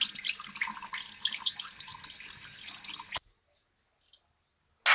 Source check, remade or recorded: recorded